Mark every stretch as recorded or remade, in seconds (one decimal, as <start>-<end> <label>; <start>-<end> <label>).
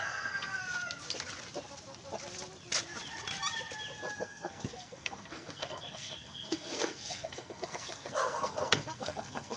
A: 0.0-0.6 remade; 0.6-4.2 recorded; 4.2-9.6 remade